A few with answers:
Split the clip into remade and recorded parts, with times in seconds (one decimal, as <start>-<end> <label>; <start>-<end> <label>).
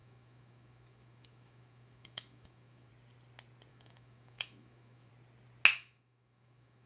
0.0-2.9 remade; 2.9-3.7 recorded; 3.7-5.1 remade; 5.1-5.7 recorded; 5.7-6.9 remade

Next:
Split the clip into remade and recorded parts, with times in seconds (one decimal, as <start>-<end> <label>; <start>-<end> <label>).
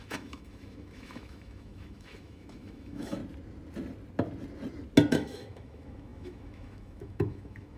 0.0-3.2 remade; 3.2-5.1 recorded; 5.1-7.8 remade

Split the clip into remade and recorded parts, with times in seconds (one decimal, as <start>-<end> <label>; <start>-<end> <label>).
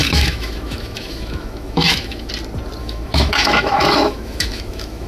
0.0-2.3 remade; 2.3-2.8 recorded; 2.8-5.1 remade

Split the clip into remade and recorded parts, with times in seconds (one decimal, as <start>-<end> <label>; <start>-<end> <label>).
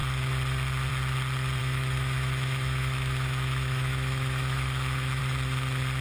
0.0-1.6 recorded; 1.6-5.2 remade; 5.2-6.0 recorded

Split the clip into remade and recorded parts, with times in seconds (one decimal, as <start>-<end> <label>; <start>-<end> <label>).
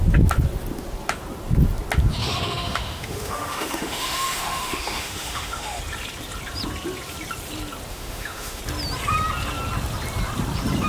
0.0-2.2 recorded; 2.2-5.8 remade; 5.8-7.9 recorded; 7.9-8.6 remade; 8.6-10.9 recorded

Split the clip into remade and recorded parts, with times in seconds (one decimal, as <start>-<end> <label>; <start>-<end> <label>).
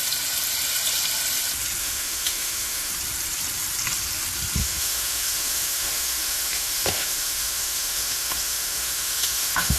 0.0-1.8 recorded; 1.8-2.9 remade; 2.9-4.6 recorded; 4.6-9.8 remade